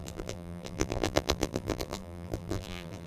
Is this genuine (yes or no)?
no